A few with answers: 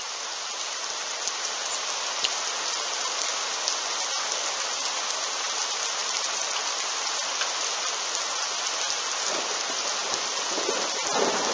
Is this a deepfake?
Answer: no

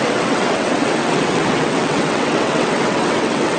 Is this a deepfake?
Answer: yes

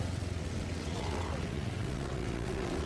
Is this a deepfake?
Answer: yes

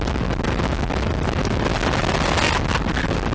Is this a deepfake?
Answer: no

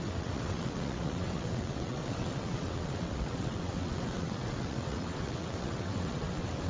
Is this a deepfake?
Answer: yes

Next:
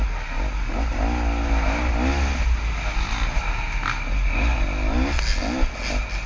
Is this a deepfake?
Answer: no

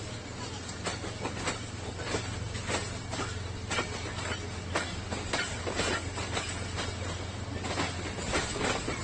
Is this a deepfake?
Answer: no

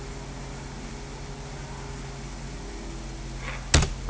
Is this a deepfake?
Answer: no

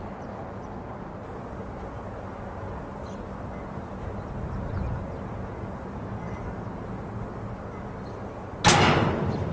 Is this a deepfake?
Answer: no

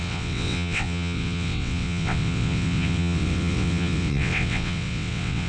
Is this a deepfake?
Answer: yes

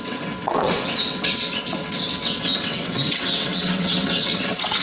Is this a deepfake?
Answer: yes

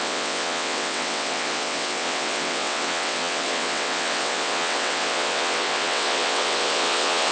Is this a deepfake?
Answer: yes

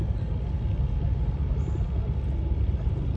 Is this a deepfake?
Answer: no